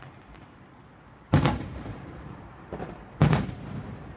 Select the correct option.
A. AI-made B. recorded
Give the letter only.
A